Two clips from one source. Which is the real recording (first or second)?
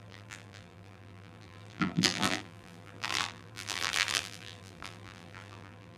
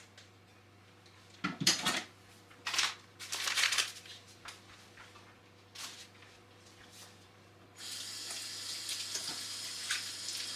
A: second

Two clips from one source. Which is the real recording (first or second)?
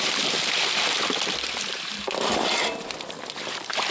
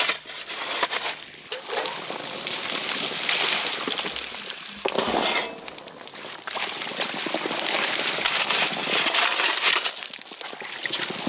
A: second